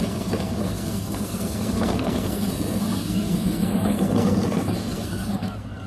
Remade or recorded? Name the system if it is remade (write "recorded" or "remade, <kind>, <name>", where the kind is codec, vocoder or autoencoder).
remade, codec, SNAC